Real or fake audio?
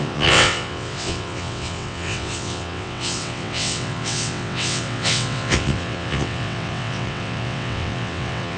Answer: fake